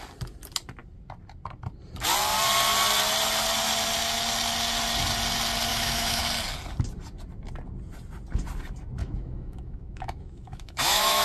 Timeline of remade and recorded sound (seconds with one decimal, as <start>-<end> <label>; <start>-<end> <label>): 0.0-5.7 recorded; 5.7-6.2 remade; 6.2-9.0 recorded; 9.0-11.2 remade